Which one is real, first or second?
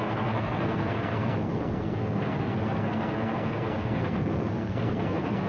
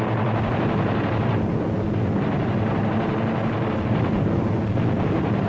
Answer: second